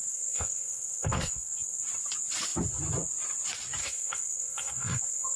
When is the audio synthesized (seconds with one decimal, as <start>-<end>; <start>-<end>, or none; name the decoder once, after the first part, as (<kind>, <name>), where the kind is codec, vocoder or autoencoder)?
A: 0.0-1.8 (codec, SNAC); 3.8-5.4